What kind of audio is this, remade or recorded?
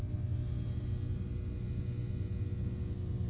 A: recorded